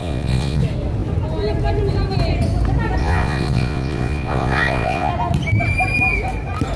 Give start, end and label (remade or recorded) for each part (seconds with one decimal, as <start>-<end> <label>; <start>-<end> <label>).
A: 0.0-0.6 remade; 0.6-3.0 recorded; 3.0-5.1 remade; 5.1-6.8 recorded